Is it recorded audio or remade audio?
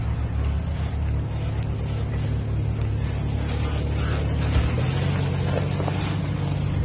recorded